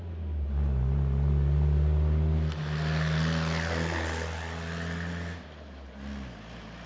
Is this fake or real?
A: real